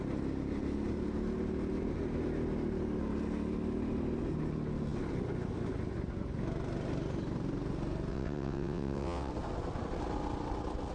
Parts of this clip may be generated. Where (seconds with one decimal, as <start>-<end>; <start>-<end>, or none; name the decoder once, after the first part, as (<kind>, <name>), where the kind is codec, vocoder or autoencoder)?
8.1-9.3 (vocoder, WaveNeXt)